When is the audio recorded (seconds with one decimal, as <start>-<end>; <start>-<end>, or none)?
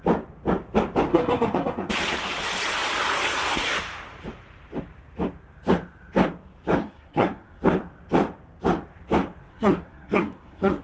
0.0-1.1; 1.9-6.8; 7.6-9.5